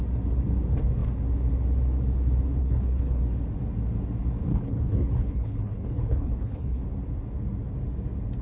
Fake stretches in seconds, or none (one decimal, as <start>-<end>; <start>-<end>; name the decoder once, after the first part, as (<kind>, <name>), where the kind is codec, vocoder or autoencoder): 2.6-3.2 (codec, HILCodec); 4.5-6.8